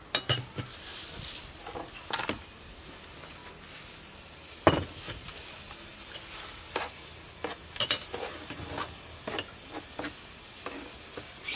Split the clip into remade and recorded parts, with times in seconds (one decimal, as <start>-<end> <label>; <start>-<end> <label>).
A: 0.0-11.6 recorded